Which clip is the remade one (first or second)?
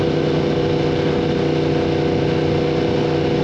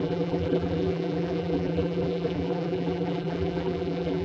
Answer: second